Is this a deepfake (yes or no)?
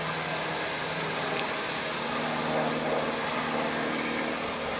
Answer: no